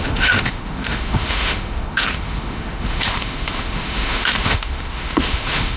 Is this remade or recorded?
remade